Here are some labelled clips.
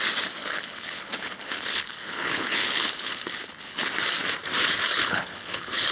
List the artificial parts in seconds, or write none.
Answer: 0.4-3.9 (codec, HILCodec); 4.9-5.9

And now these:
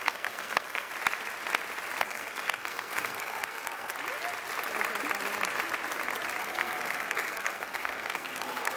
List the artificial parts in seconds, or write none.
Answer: 0.0-0.9 (codec, SNAC); 2.0-3.9; 6.4-8.8

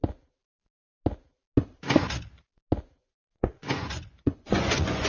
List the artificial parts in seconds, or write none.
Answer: 3.0-5.1 (vocoder, Vocos)